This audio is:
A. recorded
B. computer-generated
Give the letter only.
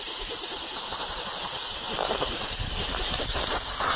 A